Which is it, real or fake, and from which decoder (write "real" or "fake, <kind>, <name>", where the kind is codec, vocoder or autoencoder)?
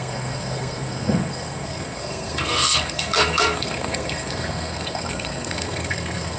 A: fake, codec, SNAC